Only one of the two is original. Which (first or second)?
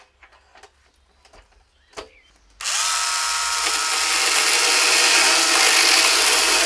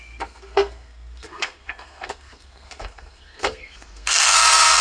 first